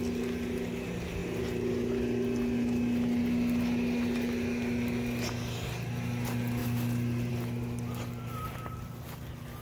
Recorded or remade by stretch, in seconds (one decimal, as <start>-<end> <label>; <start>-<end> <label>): 0.0-9.6 recorded